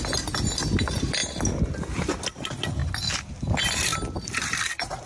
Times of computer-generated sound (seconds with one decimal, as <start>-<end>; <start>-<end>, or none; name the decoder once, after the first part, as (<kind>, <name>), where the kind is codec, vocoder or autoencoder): 2.8-3.4 (vocoder, BigVGAN v2); 3.9-5.1